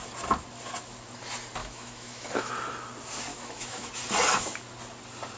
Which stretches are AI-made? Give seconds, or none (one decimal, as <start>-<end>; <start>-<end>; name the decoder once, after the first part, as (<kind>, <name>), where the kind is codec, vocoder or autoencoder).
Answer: 1.6-2.5 (autoencoder, DAC-VAE); 3.3-3.9